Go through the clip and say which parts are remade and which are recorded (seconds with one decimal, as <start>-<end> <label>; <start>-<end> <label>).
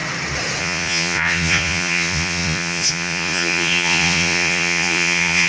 0.0-0.6 recorded; 0.6-5.5 remade